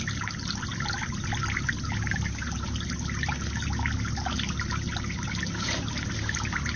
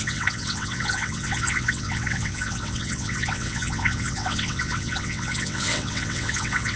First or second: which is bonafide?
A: first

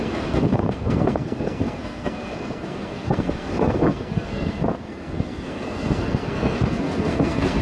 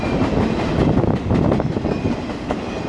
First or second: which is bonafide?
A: second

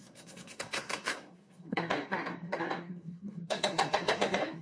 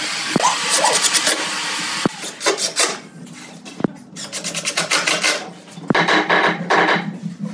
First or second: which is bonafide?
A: second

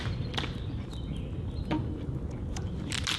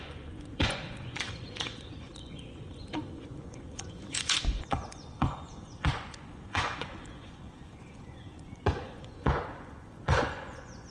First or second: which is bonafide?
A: first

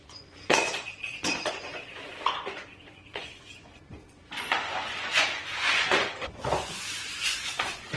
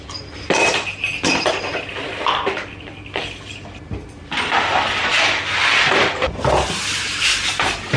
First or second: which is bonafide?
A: second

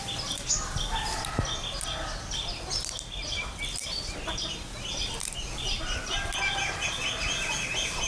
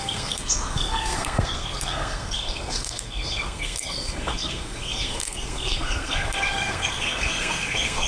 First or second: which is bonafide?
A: first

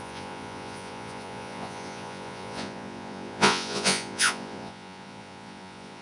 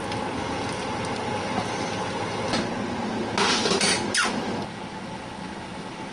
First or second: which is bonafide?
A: second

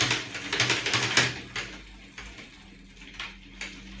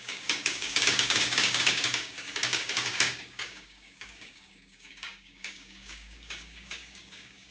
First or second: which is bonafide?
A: first